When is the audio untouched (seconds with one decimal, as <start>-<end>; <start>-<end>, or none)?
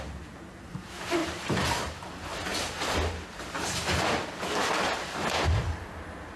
0.0-1.2; 2.1-6.4